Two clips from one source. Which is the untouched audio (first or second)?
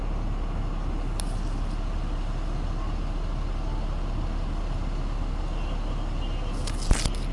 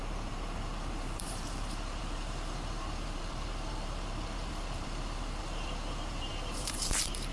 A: first